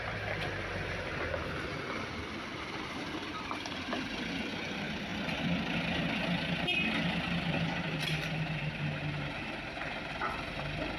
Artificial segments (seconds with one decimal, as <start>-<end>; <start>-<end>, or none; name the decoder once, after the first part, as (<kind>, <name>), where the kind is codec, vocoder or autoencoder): none